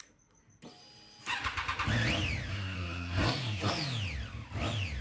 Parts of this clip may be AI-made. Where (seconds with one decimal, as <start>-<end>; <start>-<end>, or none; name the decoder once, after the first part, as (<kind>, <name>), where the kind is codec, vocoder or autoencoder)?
2.5-3.7 (codec, SNAC)